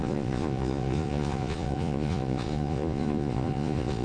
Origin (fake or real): fake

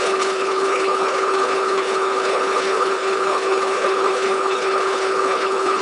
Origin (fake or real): fake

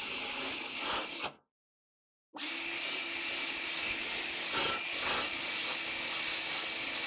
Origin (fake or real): real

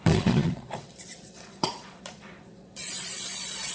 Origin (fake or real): fake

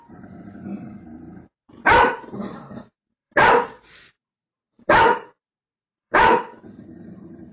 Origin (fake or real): fake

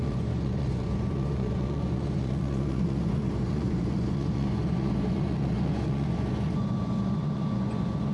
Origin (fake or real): fake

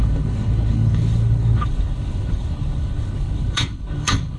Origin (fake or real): fake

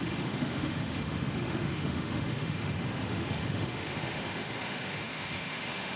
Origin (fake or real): fake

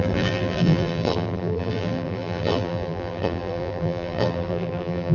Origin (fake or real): fake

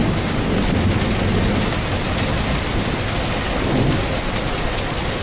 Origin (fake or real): real